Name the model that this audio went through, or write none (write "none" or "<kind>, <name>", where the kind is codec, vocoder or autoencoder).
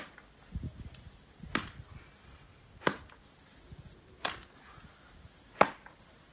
none